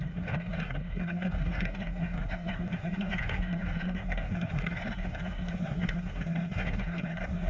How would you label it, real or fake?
fake